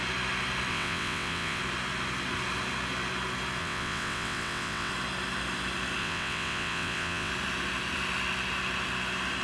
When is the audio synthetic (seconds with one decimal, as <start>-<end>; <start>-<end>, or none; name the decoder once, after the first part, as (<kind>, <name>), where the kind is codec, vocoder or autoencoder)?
0.7-1.6 (vocoder, WaveNeXt); 3.6-4.9; 6.0-7.3